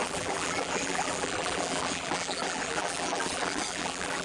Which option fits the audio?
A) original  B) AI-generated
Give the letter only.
B